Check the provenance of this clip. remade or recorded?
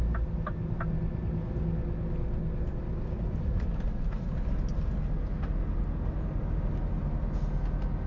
recorded